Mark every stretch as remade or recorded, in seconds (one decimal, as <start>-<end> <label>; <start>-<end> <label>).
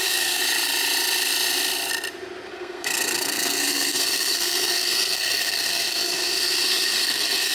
0.0-0.4 remade; 0.4-2.5 recorded; 2.5-7.5 remade